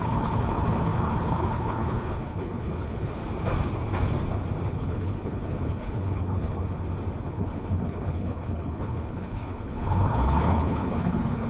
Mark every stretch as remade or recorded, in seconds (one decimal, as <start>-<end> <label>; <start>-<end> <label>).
0.0-3.2 remade; 3.2-4.7 recorded; 4.7-6.6 remade; 6.6-7.2 recorded; 7.2-11.5 remade